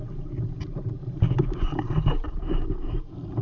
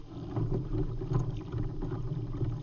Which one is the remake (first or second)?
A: first